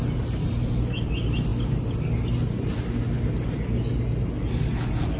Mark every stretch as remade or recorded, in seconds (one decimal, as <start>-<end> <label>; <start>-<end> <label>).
0.0-5.2 recorded